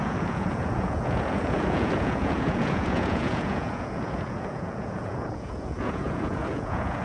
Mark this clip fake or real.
fake